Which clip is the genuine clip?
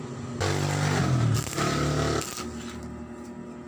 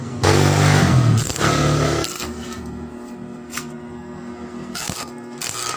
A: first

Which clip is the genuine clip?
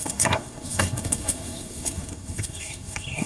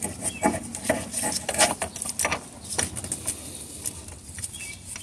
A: second